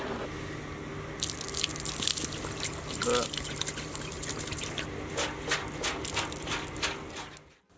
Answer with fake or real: real